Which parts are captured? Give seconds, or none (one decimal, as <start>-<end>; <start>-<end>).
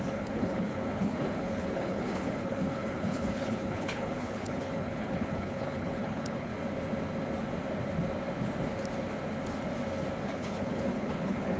6.5-10.2